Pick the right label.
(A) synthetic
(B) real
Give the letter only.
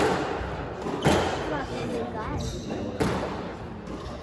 B